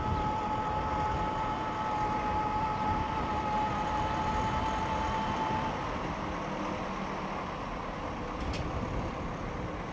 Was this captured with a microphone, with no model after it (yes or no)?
yes